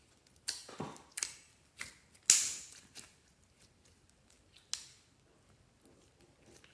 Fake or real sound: real